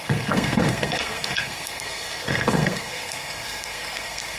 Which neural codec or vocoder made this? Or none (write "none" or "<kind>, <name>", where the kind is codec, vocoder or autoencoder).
codec, SNAC